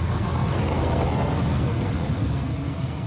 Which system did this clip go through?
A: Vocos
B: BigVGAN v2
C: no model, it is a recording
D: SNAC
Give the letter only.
D